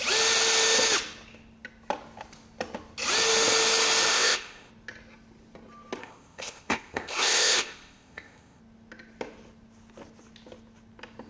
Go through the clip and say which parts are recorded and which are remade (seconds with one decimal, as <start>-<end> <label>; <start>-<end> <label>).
0.0-4.1 recorded; 4.1-4.7 remade; 4.7-6.0 recorded; 6.0-8.6 remade; 8.6-11.3 recorded